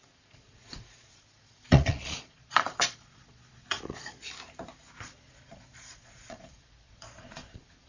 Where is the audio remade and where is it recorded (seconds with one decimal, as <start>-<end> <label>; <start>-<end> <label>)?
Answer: 0.0-4.2 remade; 4.2-5.0 recorded; 5.0-7.9 remade